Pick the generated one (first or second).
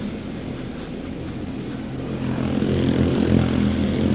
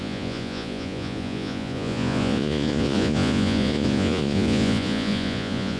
second